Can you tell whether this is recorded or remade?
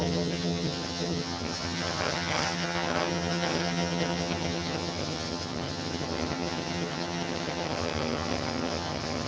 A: remade